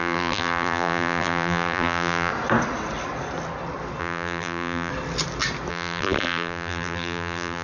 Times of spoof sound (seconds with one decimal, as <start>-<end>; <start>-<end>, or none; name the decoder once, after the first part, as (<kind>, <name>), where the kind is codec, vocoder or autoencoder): 0.0-2.3 (vocoder, BigVGAN v2); 4.0-4.9; 5.7-7.6